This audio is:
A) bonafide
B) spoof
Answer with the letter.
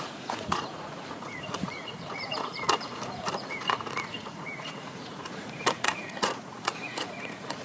B